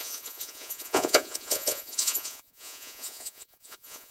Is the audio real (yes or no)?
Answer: no